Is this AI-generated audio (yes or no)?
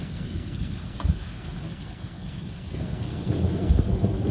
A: yes